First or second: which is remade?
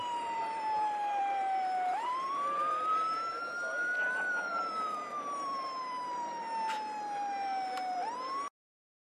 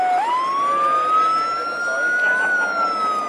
first